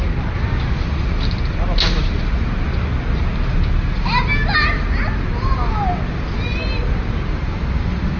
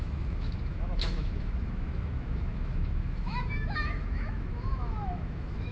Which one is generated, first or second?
second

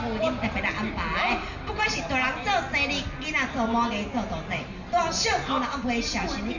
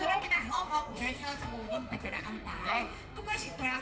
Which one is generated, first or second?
second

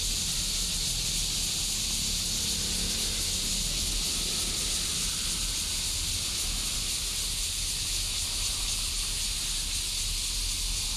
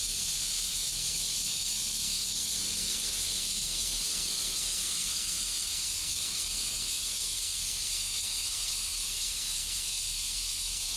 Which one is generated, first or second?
second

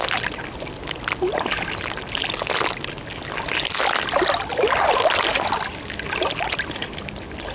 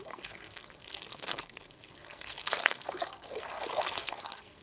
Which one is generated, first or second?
second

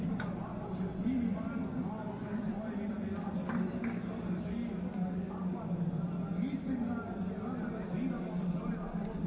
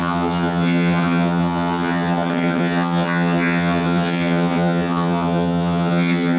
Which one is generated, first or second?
second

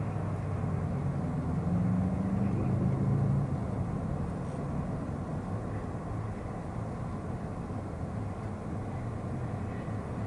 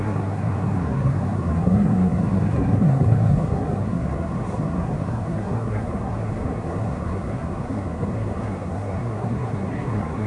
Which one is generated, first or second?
second